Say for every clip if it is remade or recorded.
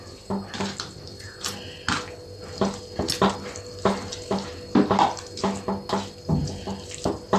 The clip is recorded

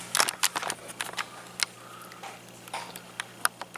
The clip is recorded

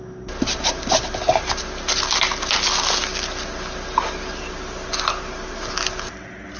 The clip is recorded